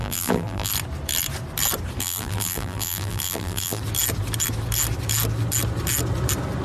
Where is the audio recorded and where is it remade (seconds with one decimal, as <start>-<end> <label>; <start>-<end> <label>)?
0.0-0.7 remade; 0.7-2.0 recorded; 2.0-3.8 remade; 3.8-6.6 recorded